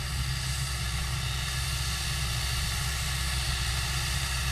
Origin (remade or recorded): recorded